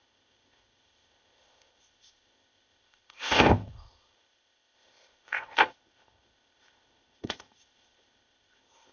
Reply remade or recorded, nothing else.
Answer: remade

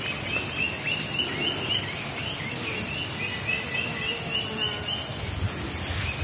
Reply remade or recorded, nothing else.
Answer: recorded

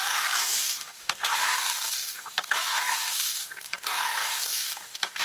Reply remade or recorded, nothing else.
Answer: remade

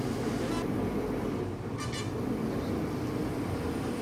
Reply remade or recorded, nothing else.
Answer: recorded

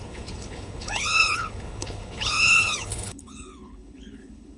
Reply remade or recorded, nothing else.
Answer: remade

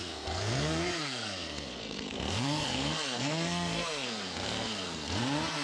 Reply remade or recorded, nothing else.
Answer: remade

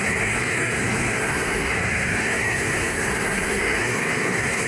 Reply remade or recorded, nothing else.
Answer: remade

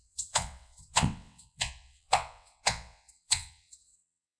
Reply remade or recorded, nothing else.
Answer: remade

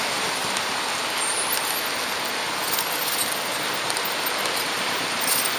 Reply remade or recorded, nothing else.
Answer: recorded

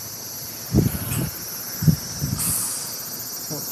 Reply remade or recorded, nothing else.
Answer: recorded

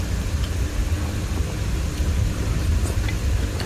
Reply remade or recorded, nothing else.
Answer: recorded